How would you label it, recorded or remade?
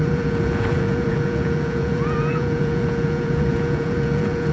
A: remade